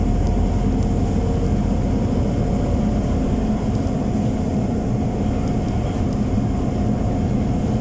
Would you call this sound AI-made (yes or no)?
no